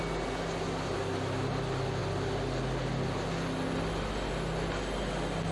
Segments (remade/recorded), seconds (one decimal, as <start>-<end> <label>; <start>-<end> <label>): 0.0-5.5 recorded